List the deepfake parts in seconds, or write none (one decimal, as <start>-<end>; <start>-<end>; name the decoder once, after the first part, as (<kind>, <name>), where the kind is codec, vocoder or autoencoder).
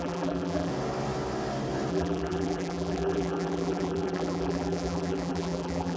0.0-0.7 (vocoder, BigVGAN v2); 1.9-6.0